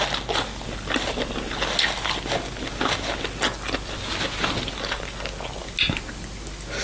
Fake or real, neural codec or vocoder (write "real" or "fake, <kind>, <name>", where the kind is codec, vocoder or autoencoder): real